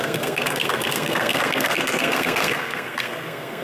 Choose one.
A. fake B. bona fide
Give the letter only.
A